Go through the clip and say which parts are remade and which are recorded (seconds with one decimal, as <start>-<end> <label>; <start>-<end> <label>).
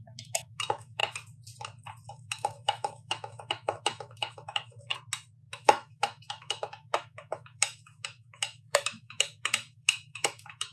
0.0-1.0 remade; 1.0-2.1 recorded; 2.1-4.9 remade; 4.9-5.5 recorded; 5.5-10.7 remade